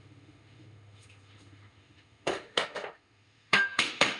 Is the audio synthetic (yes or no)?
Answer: yes